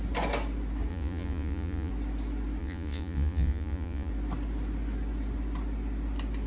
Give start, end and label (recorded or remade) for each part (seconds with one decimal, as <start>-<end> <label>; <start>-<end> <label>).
0.0-0.9 recorded; 0.9-1.9 remade; 1.9-2.6 recorded; 2.6-4.1 remade; 4.1-6.5 recorded